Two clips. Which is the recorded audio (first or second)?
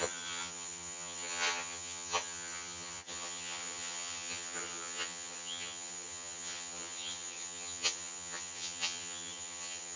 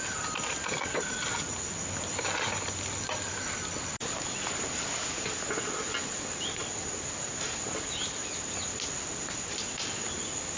second